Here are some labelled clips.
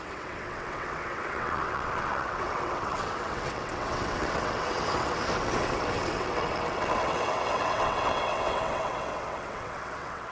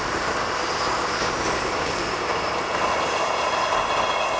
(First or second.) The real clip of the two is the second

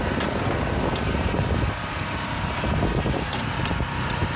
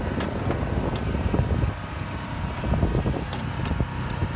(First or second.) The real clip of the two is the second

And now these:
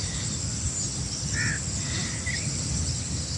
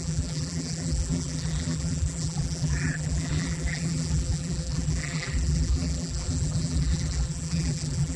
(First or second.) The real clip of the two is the first